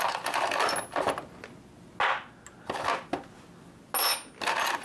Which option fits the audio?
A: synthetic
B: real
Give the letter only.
B